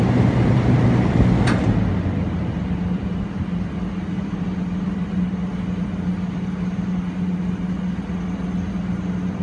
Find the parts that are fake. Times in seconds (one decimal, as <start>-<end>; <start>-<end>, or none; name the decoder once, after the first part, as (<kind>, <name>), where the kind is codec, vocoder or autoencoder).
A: none